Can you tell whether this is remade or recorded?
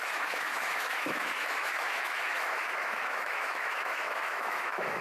remade